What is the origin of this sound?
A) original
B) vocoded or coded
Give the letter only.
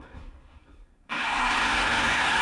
B